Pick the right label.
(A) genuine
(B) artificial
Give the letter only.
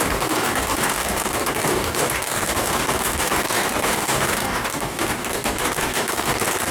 B